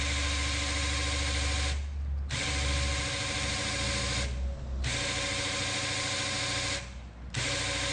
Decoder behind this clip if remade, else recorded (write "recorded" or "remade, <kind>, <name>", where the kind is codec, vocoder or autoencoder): recorded